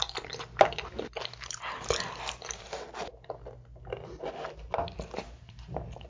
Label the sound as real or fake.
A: real